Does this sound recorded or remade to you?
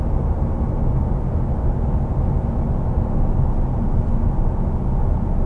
recorded